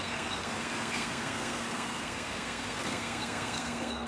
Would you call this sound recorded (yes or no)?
no